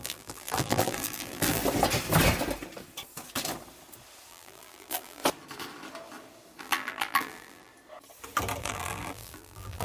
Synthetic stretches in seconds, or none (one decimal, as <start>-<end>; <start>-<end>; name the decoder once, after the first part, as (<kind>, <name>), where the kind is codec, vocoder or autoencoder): 0.0-1.6 (vocoder, BigVGAN v2); 4.3-5.2; 6.6-7.7; 8.6-9.8